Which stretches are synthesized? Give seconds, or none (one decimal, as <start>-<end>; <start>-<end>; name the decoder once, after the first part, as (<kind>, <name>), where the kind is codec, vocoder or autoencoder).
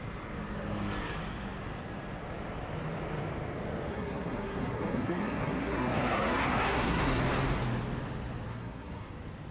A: 3.9-7.2 (codec, SNAC); 8.5-9.1